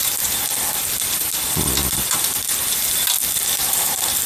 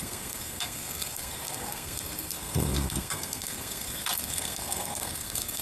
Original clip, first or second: first